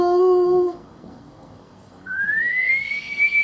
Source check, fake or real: fake